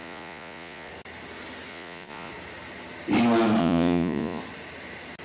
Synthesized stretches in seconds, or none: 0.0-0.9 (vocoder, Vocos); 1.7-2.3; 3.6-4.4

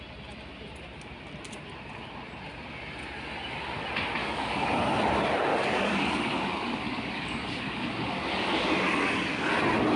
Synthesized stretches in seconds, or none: 4.2-4.7 (codec, DAC); 5.5-9.5

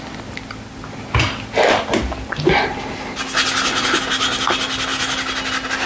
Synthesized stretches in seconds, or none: none

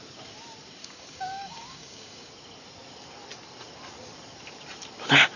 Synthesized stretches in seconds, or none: 0.8-2.3 (codec, DAC)

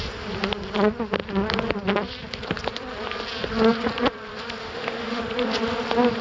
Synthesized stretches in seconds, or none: 4.6-5.2 (autoencoder, DAC-VAE)

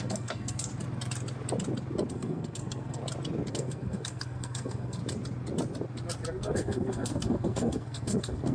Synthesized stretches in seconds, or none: 0.0-0.7 (codec, SNAC); 2.1-3.0; 3.5-5.0; 6.3-8.5

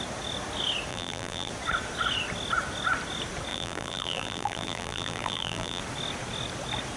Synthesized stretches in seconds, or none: 0.9-1.5 (vocoder, BigVGAN v2); 3.5-5.8

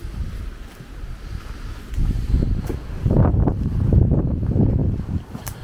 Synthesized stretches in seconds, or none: 0.0-0.5 (vocoder, BigVGAN v2); 3.0-4.8